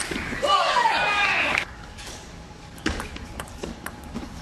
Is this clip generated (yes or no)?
yes